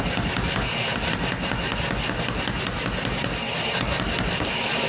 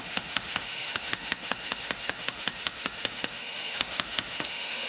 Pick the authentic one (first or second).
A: first